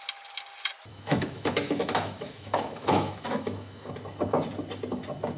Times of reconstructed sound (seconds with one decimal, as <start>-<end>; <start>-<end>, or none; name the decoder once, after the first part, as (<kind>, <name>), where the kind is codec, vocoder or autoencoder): 0.9-3.9 (autoencoder, DAC-VAE)